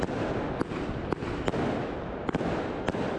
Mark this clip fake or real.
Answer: real